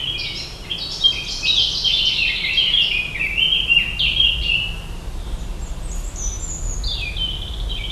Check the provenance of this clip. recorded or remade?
recorded